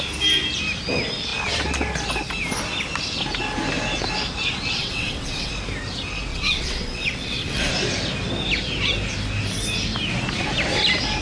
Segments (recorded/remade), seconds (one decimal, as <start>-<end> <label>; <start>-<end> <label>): 0.0-4.8 recorded; 4.8-5.5 remade; 5.5-6.3 recorded; 6.3-7.7 remade; 7.7-11.2 recorded